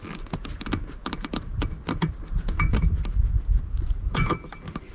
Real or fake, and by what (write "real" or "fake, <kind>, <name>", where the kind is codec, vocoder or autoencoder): real